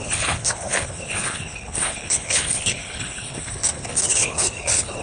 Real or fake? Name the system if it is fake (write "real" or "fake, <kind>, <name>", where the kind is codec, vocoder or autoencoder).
fake, codec, HILCodec